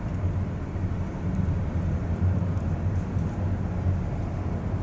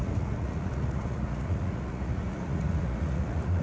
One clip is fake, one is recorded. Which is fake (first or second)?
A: second